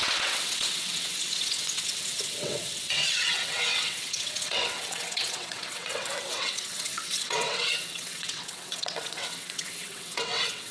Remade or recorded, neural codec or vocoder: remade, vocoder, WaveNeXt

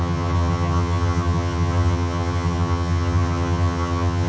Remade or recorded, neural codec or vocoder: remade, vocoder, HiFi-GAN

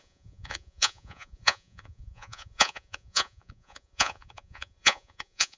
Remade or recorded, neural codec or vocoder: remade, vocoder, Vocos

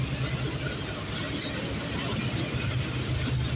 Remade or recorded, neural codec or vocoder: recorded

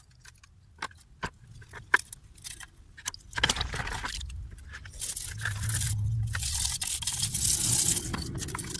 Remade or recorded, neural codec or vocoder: recorded